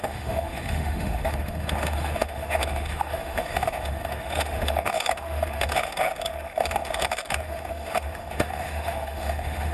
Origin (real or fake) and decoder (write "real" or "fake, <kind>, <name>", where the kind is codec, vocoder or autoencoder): fake, autoencoder, DAC-VAE